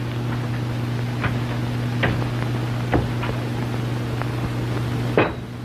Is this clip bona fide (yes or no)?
yes